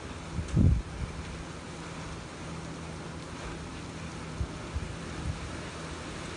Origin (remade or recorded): recorded